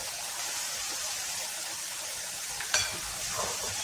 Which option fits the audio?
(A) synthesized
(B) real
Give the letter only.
A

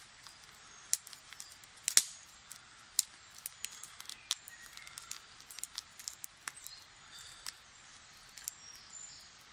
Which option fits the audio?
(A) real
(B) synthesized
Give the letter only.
A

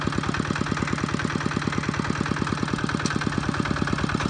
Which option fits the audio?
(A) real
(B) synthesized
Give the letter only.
A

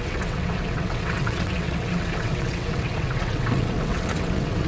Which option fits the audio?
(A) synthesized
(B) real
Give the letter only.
A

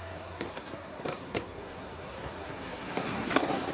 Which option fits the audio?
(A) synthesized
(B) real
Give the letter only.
A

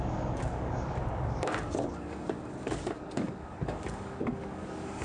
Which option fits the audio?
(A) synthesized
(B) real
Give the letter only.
A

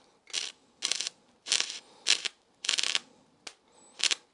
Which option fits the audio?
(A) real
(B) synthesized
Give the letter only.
A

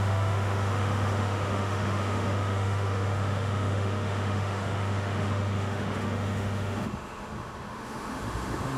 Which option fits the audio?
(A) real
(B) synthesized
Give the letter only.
B